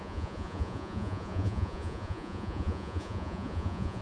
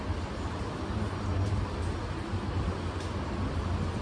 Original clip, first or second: second